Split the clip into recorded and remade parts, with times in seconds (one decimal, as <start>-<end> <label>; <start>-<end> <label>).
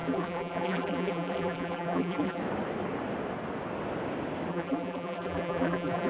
0.0-2.4 remade; 2.4-4.5 recorded; 4.5-6.1 remade